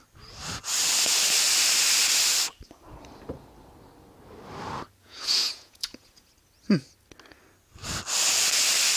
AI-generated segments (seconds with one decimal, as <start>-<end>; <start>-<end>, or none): 5.0-6.3